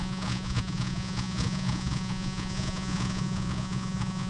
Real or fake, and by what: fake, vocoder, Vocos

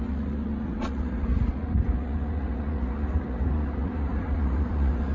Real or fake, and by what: fake, vocoder, Vocos